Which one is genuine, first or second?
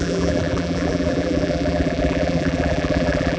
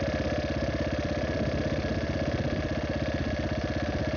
second